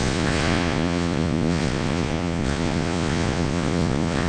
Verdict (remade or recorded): remade